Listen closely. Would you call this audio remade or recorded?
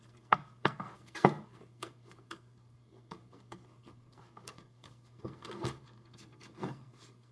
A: remade